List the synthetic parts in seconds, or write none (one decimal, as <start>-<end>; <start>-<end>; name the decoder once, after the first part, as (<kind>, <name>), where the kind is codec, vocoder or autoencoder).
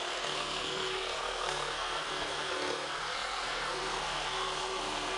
0.0-5.2 (codec, SNAC)